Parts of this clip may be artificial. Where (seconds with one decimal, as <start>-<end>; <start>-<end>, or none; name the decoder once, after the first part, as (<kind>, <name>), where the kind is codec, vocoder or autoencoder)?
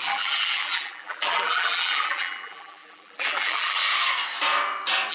0.0-3.8 (vocoder, BigVGAN v2)